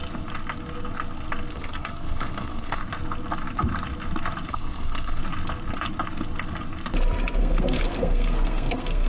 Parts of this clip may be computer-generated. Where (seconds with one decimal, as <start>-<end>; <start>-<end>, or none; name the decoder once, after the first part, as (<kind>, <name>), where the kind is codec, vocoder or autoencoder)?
1.5-2.8 (codec, SNAC); 4.5-5.2; 7.4-9.1